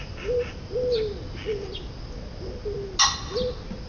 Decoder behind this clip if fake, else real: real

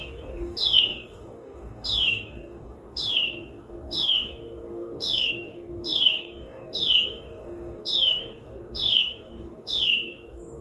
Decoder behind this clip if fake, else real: fake, codec, DAC